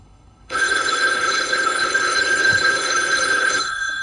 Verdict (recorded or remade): remade